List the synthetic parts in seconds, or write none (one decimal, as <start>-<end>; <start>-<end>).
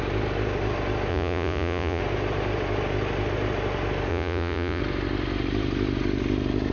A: 1.1-2.0; 4.1-4.8